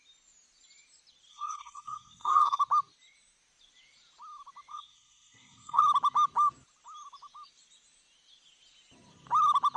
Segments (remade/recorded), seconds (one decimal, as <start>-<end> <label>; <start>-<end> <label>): 0.0-1.3 recorded; 1.3-2.6 remade; 2.6-4.7 recorded; 4.7-5.8 remade; 5.8-9.8 recorded